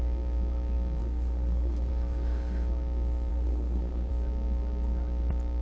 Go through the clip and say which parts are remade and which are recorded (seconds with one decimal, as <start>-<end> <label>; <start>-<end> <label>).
0.0-1.0 recorded; 1.0-1.9 remade; 1.9-3.3 recorded; 3.3-4.1 remade; 4.1-5.6 recorded